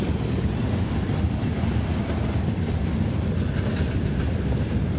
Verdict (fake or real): real